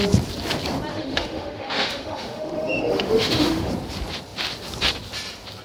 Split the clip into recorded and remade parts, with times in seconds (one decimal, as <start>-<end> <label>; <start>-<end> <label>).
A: 0.0-0.9 recorded; 0.9-3.7 remade; 3.7-5.6 recorded